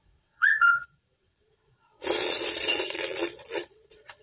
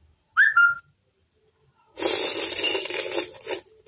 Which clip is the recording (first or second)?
second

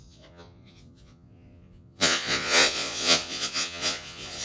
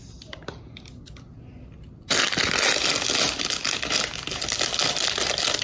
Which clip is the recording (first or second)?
second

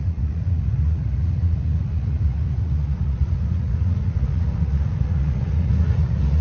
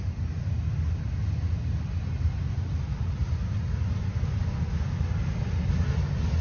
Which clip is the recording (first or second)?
second